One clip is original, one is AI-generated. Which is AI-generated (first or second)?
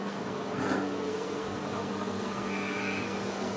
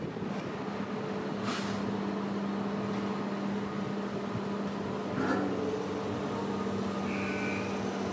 first